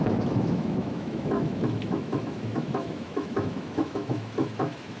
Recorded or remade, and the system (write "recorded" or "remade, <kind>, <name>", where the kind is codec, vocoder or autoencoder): remade, autoencoder, DAC-VAE